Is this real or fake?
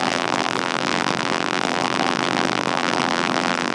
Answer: fake